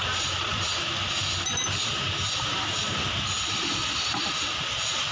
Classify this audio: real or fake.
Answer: real